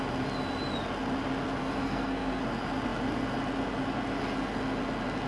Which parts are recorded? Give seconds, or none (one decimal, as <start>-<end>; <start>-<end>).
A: 0.0-1.6; 2.4-5.3